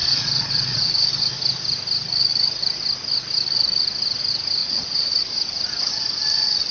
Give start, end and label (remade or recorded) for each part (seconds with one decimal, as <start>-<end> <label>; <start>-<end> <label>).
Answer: 0.0-0.9 remade; 0.9-4.6 recorded; 4.6-5.1 remade; 5.1-6.7 recorded